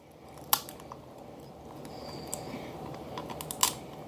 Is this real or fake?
real